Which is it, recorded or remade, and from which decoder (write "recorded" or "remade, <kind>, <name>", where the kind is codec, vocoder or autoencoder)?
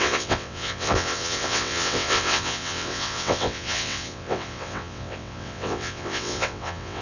remade, vocoder, WaveNeXt